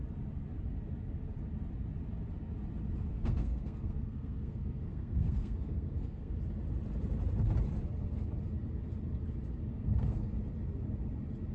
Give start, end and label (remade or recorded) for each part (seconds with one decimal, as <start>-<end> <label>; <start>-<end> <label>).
0.0-3.1 recorded; 3.1-6.3 remade; 6.3-9.7 recorded; 9.7-10.3 remade; 10.3-11.5 recorded